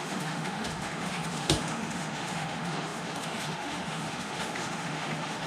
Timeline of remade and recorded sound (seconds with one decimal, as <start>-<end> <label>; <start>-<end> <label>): 0.0-5.5 remade